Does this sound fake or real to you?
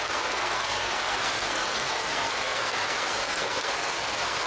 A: fake